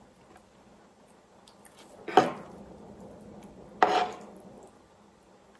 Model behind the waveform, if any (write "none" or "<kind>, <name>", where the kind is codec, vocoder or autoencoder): none